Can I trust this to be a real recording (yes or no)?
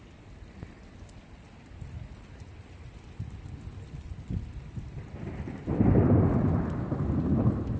no